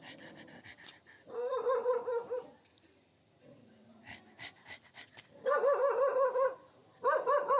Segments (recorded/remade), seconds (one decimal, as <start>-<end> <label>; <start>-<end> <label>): 0.0-7.6 recorded